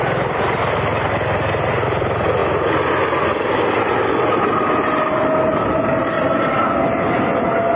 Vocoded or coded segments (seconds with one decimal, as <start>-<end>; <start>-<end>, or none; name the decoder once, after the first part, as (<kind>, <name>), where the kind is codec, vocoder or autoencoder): none